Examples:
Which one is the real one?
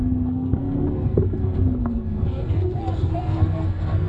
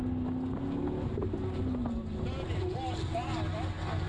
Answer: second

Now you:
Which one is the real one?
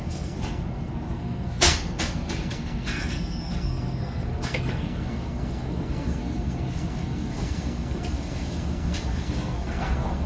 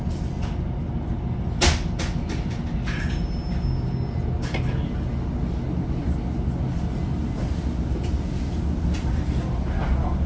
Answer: second